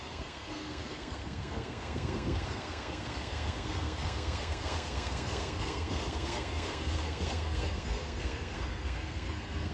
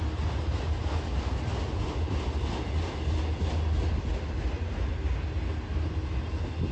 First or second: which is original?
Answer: second